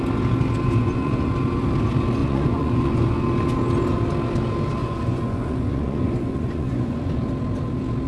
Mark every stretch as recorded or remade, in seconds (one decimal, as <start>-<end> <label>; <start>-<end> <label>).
0.0-0.8 recorded; 0.8-1.3 remade; 1.3-2.2 recorded; 2.2-3.2 remade; 3.2-4.8 recorded; 4.8-7.1 remade; 7.1-8.1 recorded